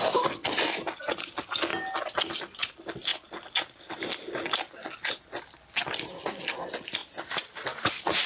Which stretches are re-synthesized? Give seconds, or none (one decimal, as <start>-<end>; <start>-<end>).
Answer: 3.1-4.3; 7.0-7.9